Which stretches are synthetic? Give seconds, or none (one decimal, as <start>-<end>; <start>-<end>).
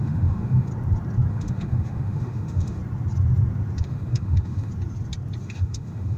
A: 0.0-0.7; 1.3-2.8; 3.8-4.7; 5.4-6.2